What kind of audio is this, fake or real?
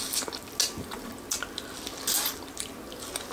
real